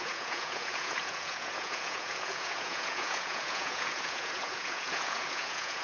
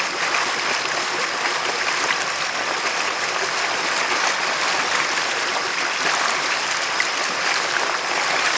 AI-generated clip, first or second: first